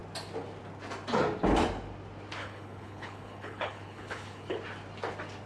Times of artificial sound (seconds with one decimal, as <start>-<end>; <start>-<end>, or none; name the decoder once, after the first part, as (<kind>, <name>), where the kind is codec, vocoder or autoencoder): 2.4-4.6 (codec, HILCodec)